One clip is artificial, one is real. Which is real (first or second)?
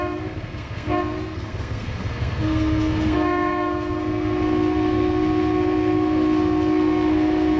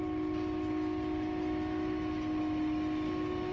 second